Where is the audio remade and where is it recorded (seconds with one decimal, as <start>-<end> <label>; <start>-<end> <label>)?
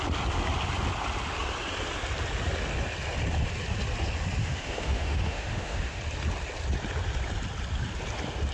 0.0-4.4 recorded; 4.4-6.0 remade; 6.0-8.5 recorded